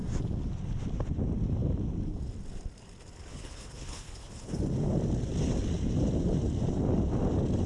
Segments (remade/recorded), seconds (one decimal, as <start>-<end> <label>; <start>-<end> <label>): 0.0-3.3 recorded; 3.3-4.6 remade; 4.6-7.7 recorded